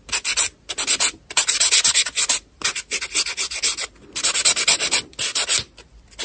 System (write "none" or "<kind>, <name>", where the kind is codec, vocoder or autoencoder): none